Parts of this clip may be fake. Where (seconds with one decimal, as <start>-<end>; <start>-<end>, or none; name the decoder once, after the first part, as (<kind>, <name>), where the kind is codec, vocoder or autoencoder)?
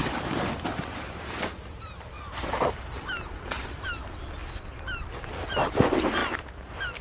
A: 0.0-2.2 (vocoder, BigVGAN v2); 4.4-5.0; 6.2-7.0